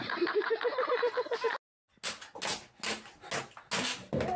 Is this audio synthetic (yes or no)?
no